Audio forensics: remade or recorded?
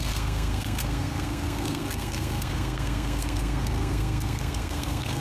remade